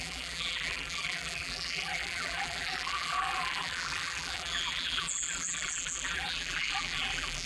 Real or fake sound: fake